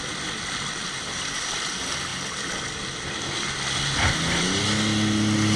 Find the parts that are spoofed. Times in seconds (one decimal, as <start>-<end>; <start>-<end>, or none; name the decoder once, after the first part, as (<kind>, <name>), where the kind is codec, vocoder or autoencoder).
none